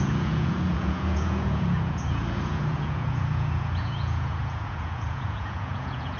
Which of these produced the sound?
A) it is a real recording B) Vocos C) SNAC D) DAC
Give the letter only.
B